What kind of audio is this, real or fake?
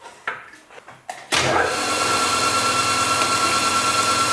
real